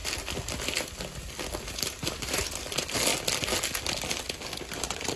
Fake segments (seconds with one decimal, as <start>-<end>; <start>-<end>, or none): 1.7-3.1; 4.8-5.2